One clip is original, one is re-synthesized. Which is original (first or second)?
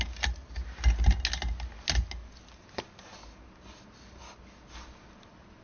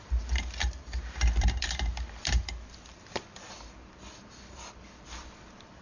first